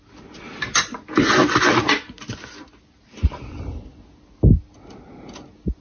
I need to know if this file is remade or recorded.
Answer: recorded